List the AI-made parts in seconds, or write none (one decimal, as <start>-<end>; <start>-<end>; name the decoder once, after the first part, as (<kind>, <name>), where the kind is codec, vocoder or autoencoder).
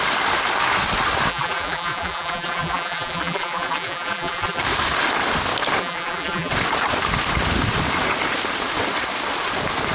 1.3-4.6 (vocoder, BigVGAN v2); 5.8-6.5